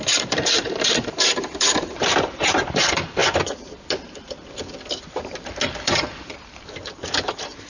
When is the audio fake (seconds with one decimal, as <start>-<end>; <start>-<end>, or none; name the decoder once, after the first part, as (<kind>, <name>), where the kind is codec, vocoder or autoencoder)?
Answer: 0.0-3.2 (vocoder, BigVGAN v2); 5.8-7.7